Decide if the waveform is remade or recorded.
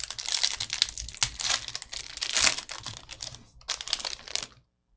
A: recorded